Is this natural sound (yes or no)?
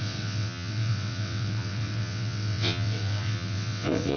no